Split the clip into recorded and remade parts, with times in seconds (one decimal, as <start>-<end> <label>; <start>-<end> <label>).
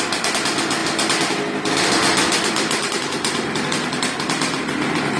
0.0-5.2 recorded